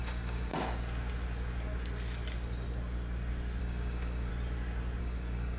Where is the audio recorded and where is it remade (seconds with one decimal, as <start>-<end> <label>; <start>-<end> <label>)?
0.0-0.5 remade; 0.5-3.6 recorded; 3.6-4.3 remade; 4.3-5.0 recorded; 5.0-5.6 remade